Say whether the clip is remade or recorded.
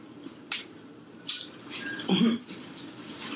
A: remade